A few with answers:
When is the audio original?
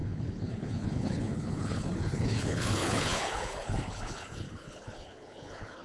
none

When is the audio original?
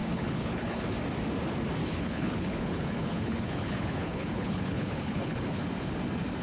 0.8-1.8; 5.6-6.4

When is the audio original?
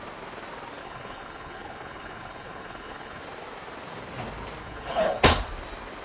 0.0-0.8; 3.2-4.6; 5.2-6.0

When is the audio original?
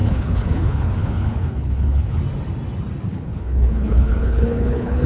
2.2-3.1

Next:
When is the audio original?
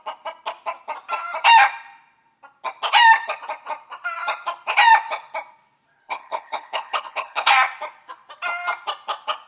0.0-6.0; 7.5-9.5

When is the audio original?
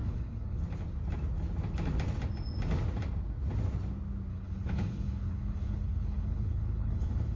0.6-4.3